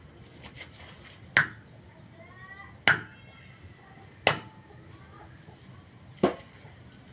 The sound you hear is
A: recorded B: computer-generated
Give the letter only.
A